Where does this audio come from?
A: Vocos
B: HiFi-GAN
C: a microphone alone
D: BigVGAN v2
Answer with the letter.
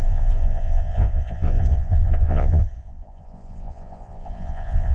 A